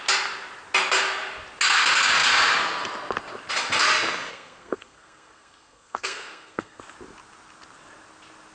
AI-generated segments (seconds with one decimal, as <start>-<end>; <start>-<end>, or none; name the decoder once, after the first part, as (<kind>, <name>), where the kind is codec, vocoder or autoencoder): 4.3-6.8 (codec, SNAC)